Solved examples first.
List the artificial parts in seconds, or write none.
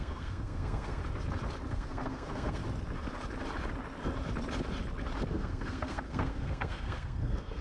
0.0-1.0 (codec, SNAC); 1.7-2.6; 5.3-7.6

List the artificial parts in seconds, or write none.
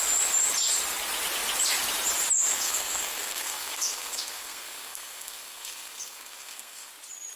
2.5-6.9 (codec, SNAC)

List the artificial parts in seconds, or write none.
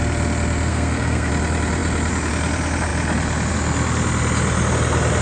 0.7-1.3 (codec, SNAC)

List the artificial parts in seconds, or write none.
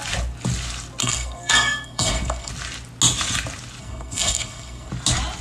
1.0-2.5 (codec, SNAC); 3.8-4.9